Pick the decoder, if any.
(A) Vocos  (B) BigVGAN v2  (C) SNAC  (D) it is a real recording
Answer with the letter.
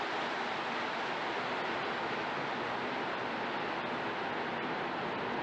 D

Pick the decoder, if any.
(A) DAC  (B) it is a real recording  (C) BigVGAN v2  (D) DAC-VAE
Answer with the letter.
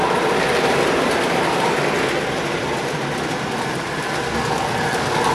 C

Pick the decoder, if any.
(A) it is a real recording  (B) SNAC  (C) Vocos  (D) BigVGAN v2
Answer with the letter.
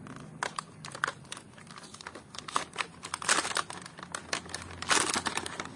A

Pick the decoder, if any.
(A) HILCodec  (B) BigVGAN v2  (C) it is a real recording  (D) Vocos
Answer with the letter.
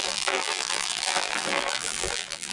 B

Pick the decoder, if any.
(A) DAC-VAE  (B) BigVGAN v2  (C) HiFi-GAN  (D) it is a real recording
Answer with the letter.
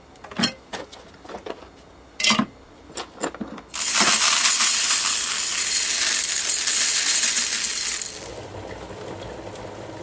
D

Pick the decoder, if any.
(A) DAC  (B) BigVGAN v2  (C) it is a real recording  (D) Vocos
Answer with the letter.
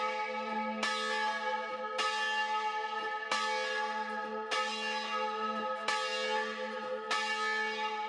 C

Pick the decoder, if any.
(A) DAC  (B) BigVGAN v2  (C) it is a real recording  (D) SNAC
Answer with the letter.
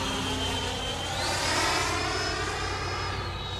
C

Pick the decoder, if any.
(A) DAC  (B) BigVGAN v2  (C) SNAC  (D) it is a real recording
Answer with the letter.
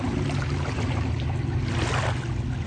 D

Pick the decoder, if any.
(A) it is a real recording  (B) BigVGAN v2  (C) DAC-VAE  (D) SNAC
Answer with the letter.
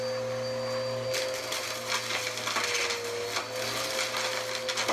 A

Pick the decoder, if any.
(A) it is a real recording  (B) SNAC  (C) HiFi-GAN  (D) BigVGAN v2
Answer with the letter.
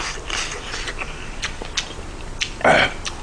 A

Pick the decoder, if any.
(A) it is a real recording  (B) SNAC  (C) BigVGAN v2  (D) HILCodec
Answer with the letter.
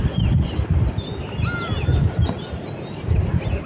A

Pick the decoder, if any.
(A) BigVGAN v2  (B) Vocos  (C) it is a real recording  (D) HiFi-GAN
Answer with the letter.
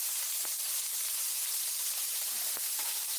A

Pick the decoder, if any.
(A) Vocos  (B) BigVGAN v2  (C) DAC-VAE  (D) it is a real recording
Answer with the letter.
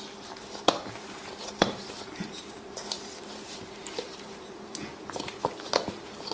B